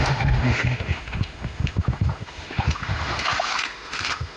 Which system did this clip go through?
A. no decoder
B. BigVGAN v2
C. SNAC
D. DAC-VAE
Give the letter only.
D